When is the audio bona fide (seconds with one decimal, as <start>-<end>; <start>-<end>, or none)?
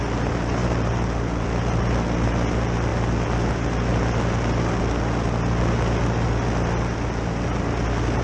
0.0-8.2